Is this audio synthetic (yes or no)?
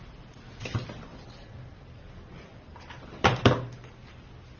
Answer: no